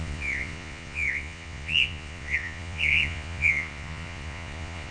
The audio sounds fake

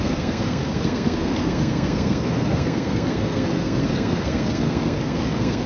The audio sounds fake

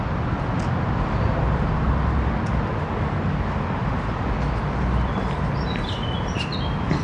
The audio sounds real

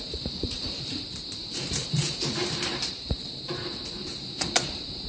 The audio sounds fake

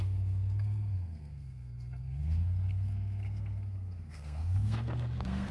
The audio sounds fake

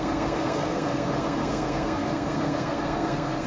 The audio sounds fake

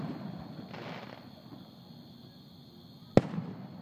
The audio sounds real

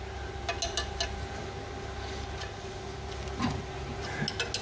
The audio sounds real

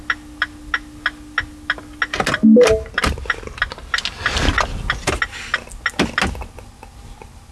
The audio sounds real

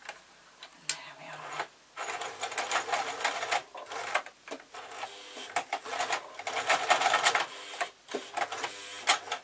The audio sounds real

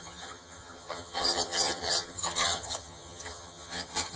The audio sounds fake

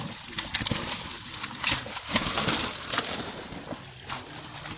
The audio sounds real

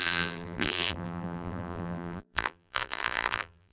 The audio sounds fake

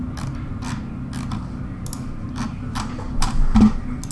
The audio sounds real